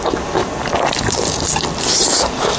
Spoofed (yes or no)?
no